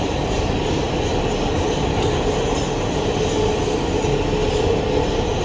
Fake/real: real